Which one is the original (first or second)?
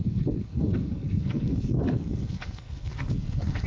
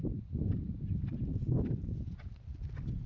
second